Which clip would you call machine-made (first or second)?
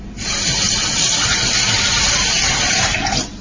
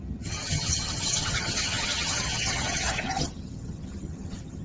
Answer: second